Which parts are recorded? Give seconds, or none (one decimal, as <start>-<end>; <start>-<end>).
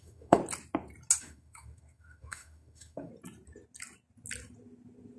0.4-1.2; 3.1-5.2